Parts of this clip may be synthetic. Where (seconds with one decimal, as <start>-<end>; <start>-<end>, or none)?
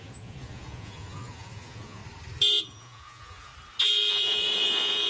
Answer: 0.0-2.0; 2.6-3.5; 4.1-5.1